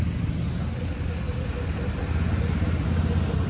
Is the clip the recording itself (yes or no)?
yes